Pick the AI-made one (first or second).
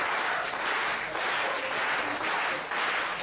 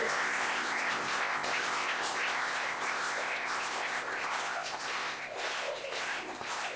second